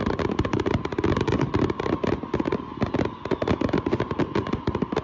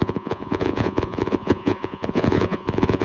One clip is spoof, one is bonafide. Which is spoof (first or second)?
second